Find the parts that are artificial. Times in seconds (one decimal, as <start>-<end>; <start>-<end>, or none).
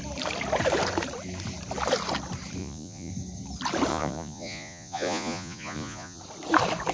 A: 2.6-3.1; 3.9-6.2